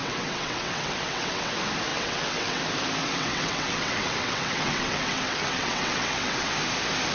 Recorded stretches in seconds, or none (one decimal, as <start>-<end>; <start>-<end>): 1.5-1.9; 2.6-3.0; 6.5-7.1